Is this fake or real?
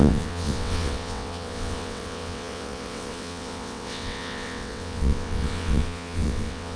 fake